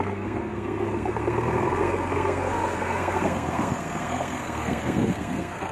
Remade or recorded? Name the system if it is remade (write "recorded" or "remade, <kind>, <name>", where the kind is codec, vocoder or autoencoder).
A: remade, codec, SNAC